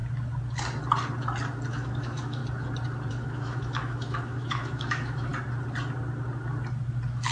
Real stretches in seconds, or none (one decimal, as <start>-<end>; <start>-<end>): 0.0-1.7; 2.4-3.1; 5.3-7.3